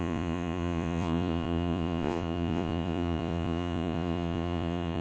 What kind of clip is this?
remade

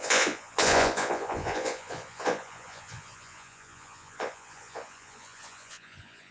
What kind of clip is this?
remade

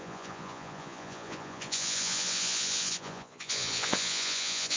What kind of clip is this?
remade